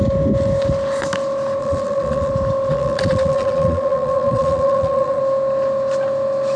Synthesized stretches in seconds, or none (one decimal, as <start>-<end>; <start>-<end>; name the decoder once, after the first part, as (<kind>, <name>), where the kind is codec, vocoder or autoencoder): 1.6-2.3 (vocoder, Vocos); 2.7-5.2